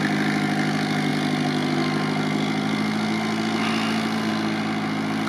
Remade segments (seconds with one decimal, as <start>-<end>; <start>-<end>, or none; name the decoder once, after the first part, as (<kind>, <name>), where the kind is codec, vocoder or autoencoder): none